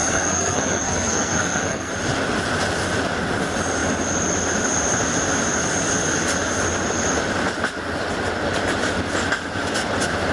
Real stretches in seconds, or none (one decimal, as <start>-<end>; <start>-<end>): 1.9-10.3